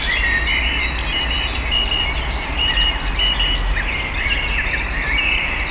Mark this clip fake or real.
real